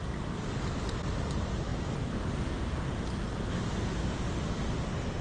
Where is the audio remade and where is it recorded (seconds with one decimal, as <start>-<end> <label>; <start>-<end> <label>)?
0.0-5.2 recorded